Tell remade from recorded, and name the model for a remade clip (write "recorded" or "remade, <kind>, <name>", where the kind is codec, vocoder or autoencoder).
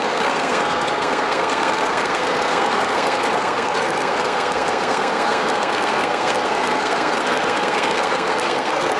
remade, codec, SNAC